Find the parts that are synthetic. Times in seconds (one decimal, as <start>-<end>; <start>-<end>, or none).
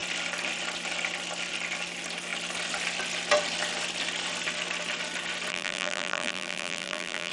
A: 5.5-7.3